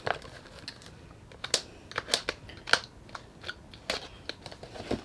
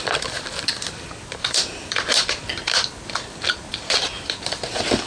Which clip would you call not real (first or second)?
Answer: second